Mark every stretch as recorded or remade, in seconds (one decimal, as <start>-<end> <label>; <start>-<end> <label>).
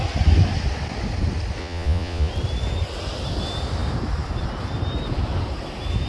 0.0-1.6 recorded; 1.6-2.3 remade; 2.3-6.1 recorded